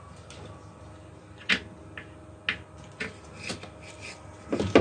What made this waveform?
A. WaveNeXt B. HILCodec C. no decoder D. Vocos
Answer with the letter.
C